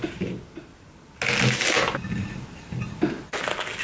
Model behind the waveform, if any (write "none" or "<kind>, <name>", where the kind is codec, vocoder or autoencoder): none